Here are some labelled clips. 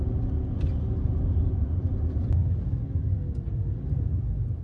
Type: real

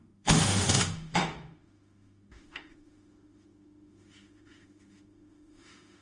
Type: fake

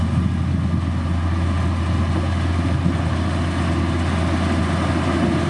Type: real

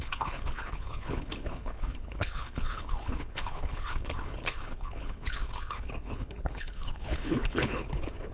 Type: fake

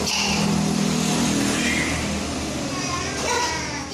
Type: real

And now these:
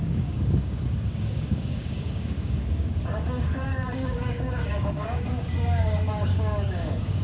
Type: fake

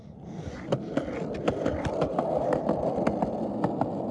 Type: real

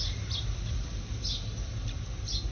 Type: real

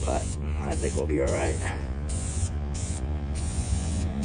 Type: fake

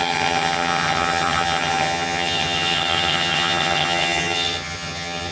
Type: fake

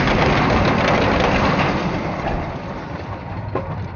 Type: real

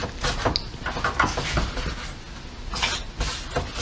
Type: real